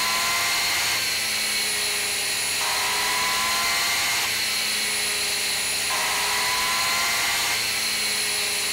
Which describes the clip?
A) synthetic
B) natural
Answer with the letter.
B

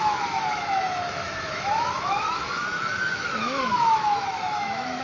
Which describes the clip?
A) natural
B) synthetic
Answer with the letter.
B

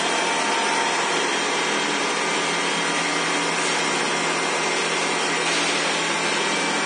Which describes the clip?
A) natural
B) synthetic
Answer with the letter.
A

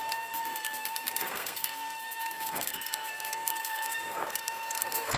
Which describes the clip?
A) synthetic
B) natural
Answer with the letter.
A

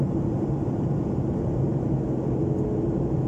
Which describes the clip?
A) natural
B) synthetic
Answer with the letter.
A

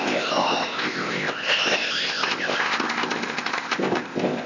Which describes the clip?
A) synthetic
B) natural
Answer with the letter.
A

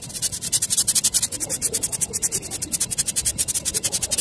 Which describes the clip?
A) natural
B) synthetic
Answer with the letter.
A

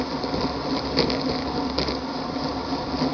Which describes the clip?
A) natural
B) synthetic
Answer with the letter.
A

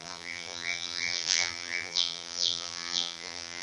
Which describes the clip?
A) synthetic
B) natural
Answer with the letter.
A